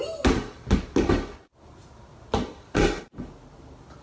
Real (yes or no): yes